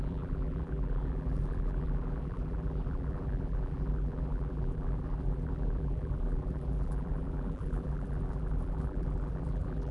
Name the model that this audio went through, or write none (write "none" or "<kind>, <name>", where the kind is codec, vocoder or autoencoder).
vocoder, BigVGAN v2